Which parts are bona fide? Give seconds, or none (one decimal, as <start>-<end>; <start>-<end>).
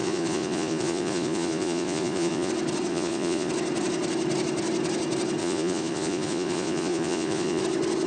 2.5-2.9; 3.5-5.4; 7.6-8.1